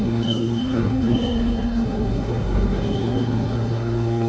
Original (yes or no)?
no